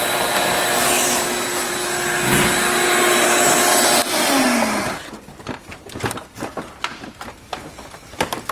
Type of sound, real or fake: real